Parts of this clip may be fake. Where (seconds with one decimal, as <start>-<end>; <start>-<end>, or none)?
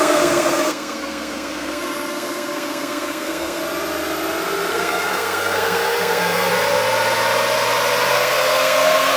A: 0.0-3.6; 4.7-6.5; 8.1-9.2